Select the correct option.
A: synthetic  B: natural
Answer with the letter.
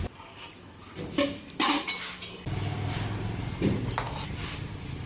B